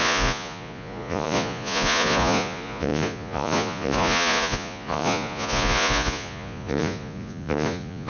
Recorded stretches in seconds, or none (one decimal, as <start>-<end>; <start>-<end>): none